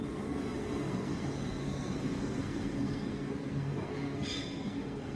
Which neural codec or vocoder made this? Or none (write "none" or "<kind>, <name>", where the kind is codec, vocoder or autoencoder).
codec, SNAC